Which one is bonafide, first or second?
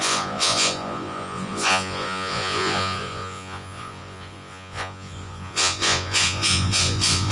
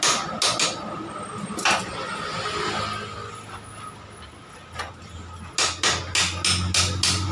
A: second